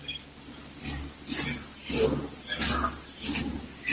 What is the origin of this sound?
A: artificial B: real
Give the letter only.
B